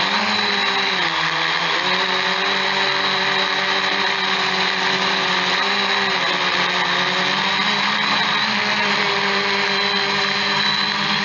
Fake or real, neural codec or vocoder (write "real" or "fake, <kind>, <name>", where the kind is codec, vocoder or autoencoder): real